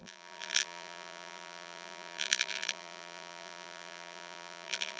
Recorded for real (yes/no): no